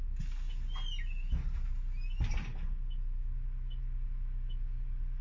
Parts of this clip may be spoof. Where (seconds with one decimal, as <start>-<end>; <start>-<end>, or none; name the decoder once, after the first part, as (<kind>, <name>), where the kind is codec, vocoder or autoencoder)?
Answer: none